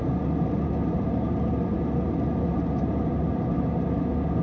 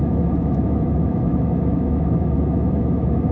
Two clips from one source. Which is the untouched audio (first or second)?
first